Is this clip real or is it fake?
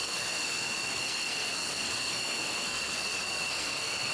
fake